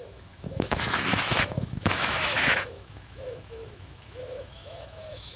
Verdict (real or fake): fake